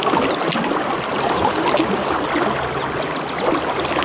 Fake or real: real